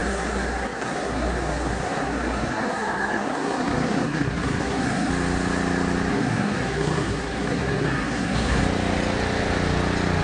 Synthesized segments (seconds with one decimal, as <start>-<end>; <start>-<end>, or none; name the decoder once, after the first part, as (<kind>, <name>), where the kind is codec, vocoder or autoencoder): 0.0-5.1 (codec, SNAC); 6.1-8.6